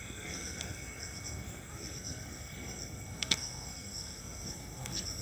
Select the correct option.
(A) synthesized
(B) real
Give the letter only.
A